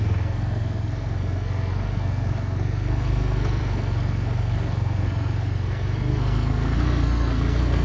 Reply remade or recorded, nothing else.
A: remade